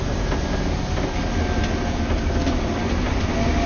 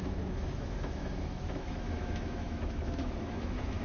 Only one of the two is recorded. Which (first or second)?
first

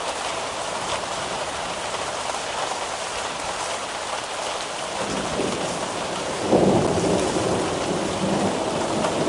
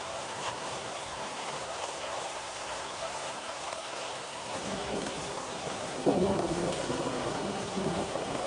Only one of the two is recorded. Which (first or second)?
first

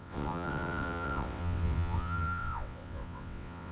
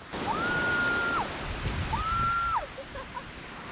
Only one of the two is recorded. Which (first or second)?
second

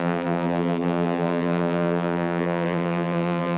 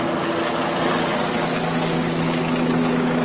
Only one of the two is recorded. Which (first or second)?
second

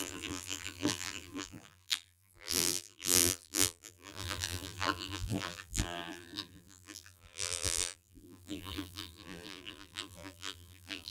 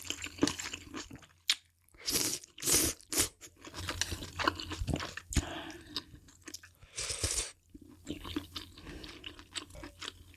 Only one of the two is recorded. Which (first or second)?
second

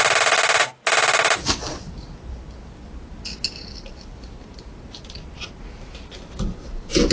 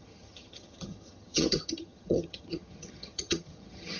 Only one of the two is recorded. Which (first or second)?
first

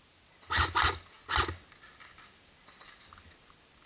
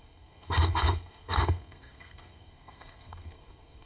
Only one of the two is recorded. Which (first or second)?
first